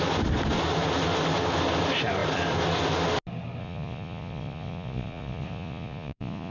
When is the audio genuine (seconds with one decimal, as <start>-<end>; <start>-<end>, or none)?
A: 0.0-3.6